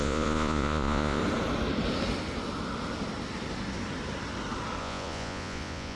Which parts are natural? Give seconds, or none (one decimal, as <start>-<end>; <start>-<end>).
1.2-4.8